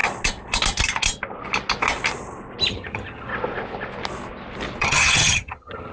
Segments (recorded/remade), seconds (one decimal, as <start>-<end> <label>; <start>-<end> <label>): 0.0-2.7 recorded; 2.7-3.3 remade; 3.3-4.8 recorded; 4.8-5.9 remade